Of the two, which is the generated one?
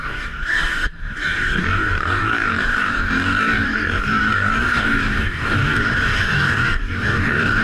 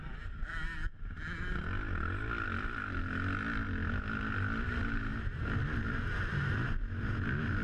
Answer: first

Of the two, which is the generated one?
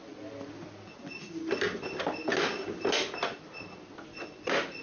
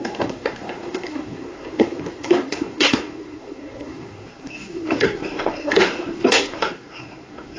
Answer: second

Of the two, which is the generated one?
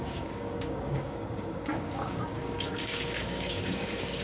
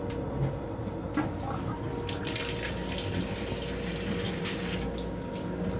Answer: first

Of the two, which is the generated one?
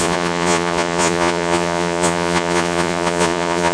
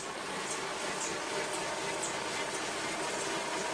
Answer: first